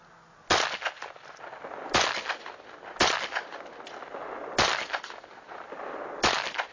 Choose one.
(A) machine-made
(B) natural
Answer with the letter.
B